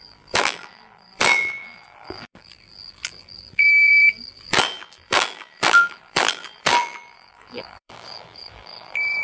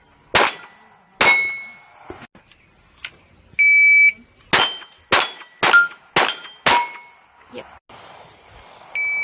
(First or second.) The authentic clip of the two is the second